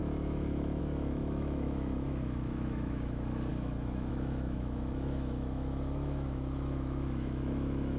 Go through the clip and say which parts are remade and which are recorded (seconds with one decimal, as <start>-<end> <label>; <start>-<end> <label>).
0.0-8.0 remade